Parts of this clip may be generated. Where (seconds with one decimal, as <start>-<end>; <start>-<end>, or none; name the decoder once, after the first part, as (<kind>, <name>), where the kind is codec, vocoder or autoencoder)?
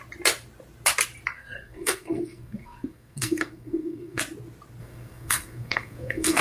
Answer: 1.3-4.2 (codec, SNAC); 4.8-6.4